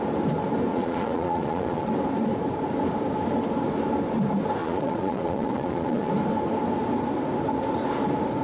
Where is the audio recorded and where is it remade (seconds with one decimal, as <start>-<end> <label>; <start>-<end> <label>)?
0.0-0.7 recorded; 0.7-1.9 remade; 1.9-4.6 recorded; 4.6-6.1 remade; 6.1-8.4 recorded